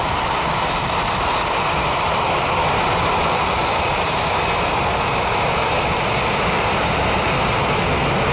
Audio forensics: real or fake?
real